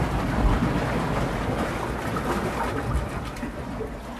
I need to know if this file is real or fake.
real